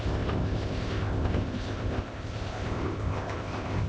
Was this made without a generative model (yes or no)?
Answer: no